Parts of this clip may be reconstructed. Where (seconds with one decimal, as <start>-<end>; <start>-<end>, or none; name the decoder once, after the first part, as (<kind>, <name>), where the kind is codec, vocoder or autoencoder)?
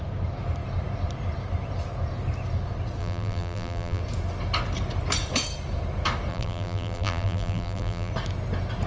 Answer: 3.0-4.0 (vocoder, BigVGAN v2); 6.3-8.1